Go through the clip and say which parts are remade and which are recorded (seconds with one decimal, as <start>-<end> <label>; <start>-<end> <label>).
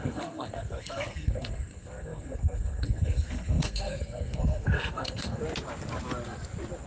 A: 0.0-5.4 remade; 5.4-6.9 recorded